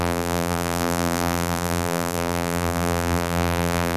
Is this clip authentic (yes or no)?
no